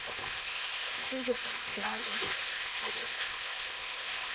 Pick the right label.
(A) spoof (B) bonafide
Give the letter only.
A